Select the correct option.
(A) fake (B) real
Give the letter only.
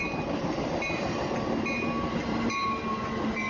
B